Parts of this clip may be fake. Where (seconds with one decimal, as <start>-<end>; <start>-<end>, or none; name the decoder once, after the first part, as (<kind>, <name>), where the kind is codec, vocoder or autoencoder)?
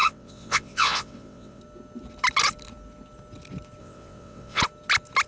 0.0-1.6 (vocoder, WaveNeXt); 3.8-4.6